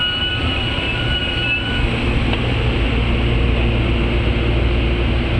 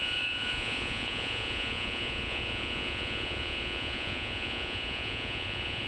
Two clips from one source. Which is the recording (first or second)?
first